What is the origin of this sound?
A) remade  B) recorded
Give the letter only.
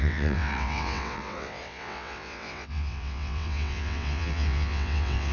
A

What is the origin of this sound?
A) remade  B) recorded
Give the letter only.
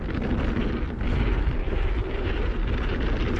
B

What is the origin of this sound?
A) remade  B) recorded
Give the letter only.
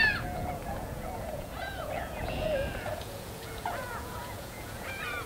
A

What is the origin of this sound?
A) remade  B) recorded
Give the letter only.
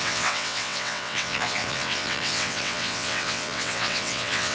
A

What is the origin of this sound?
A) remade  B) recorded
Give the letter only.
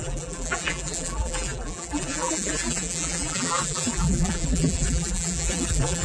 A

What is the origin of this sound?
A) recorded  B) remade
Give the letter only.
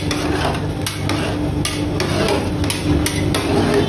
A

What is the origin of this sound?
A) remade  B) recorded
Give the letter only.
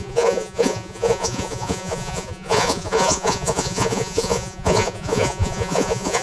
A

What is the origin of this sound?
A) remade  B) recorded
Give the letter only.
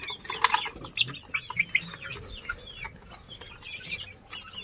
B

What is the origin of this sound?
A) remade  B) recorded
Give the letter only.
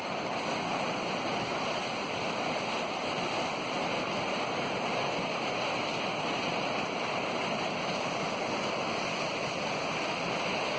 B